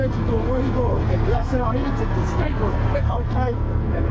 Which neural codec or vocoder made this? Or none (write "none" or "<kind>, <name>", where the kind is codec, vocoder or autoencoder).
codec, SNAC